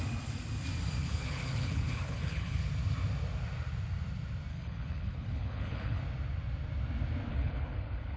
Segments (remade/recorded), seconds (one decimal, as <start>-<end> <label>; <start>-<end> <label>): 0.0-1.0 recorded; 1.0-2.6 remade; 2.6-4.5 recorded; 4.5-6.0 remade; 6.0-7.3 recorded; 7.3-8.2 remade